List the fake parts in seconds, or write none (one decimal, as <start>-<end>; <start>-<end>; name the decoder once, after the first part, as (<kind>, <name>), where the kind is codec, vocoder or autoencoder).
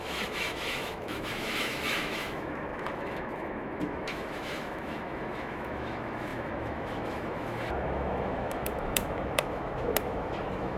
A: 0.0-10.8 (autoencoder, DAC-VAE)